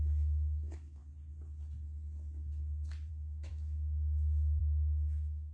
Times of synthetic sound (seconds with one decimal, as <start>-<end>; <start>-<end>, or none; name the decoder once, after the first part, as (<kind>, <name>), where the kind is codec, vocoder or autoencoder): 0.0-1.0 (autoencoder, DAC-VAE); 3.1-5.5

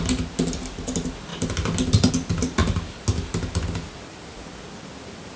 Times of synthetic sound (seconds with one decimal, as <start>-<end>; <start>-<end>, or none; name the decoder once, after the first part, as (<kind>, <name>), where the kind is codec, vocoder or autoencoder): none

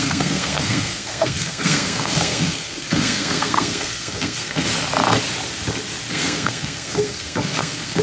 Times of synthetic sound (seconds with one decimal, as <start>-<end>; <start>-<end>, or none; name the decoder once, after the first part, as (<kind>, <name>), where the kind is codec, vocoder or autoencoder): 0.0-4.7 (codec, SNAC); 6.1-8.0

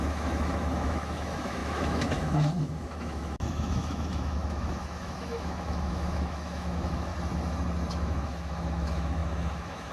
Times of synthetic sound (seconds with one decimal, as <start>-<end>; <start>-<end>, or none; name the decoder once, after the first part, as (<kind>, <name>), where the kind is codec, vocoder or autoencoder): 0.0-7.1 (autoencoder, DAC-VAE); 7.9-9.9

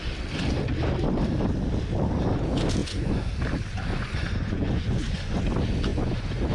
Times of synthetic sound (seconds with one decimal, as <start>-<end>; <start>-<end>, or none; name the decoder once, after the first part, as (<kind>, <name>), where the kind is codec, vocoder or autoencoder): 2.8-3.3 (vocoder, Vocos); 3.9-5.4; 5.9-6.5

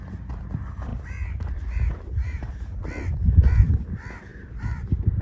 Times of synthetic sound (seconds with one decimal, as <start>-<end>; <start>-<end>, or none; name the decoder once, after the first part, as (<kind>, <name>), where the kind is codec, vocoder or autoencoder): 0.9-2.5 (vocoder, BigVGAN v2); 4.3-5.2